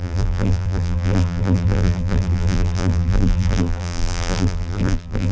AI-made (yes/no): yes